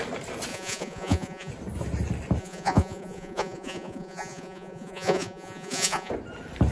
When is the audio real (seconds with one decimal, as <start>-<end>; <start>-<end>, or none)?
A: 0.0-0.5; 1.5-2.4; 6.1-6.7